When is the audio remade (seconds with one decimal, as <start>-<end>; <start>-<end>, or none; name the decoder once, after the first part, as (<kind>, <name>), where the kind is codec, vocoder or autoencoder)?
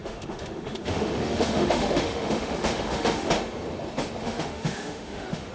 0.0-3.3 (autoencoder, DAC-VAE); 4.2-5.5